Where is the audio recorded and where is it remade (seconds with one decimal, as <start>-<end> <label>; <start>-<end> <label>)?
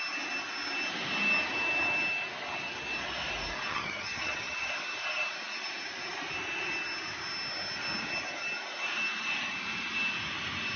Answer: 0.0-3.7 recorded; 3.7-4.7 remade; 4.7-10.8 recorded